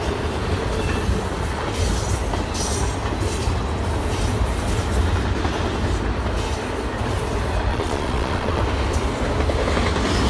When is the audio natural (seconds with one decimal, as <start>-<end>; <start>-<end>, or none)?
0.0-7.7; 8.6-10.3